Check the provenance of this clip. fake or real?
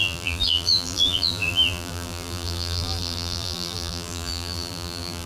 fake